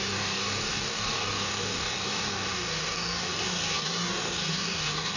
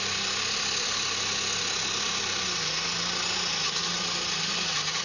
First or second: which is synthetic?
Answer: first